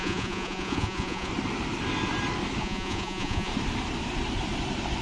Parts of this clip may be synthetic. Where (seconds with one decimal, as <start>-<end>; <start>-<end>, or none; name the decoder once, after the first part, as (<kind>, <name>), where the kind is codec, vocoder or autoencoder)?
0.0-1.3 (vocoder, Vocos); 2.6-3.5